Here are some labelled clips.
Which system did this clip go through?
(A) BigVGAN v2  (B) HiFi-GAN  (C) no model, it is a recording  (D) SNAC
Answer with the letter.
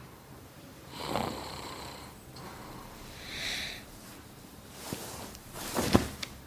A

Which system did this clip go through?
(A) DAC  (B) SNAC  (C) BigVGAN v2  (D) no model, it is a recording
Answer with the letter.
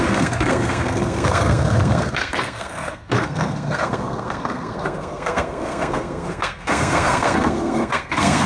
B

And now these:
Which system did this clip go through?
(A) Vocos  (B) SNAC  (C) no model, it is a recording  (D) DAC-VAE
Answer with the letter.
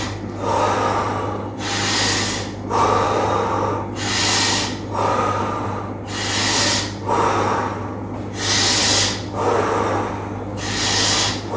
C